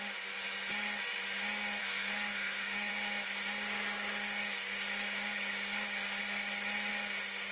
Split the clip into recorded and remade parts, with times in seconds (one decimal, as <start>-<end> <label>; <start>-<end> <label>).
0.0-1.8 recorded; 1.8-2.9 remade; 2.9-7.5 recorded